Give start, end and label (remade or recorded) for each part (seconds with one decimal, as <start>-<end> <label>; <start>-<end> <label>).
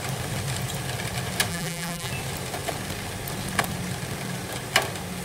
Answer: 0.0-1.5 recorded; 1.5-2.1 remade; 2.1-5.2 recorded